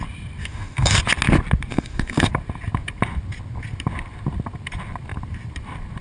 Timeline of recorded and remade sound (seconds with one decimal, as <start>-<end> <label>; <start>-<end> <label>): 0.0-0.4 recorded; 0.4-1.0 remade; 1.0-1.7 recorded; 1.7-2.3 remade; 2.3-6.0 recorded